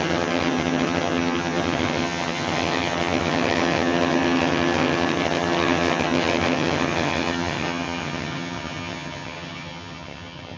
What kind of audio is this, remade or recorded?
remade